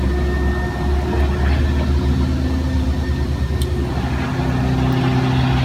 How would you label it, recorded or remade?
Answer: recorded